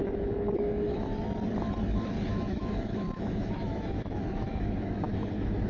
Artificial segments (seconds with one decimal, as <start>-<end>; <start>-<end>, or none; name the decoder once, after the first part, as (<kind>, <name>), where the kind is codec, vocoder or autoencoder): 0.0-1.2 (autoencoder, DAC-VAE); 2.3-5.7